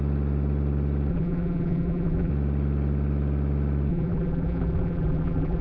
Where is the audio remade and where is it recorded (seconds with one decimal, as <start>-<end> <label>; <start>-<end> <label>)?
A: 0.0-1.1 recorded; 1.1-2.3 remade; 2.3-3.9 recorded; 3.9-5.6 remade